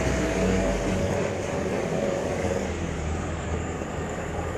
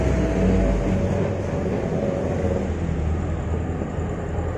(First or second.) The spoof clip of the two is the first